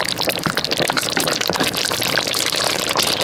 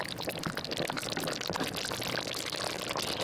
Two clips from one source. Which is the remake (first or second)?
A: first